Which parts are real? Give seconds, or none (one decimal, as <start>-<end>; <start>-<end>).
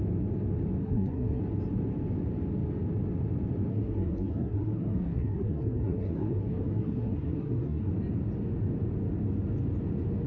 0.0-0.8; 1.4-3.7; 7.9-10.3